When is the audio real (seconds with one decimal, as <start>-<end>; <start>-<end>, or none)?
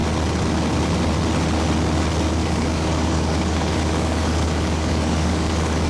0.0-2.4